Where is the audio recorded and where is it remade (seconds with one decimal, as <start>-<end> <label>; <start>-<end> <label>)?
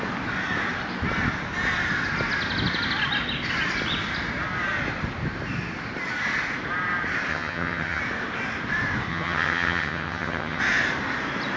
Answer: 0.0-7.3 recorded; 7.3-8.0 remade; 8.0-9.1 recorded; 9.1-10.6 remade; 10.6-11.6 recorded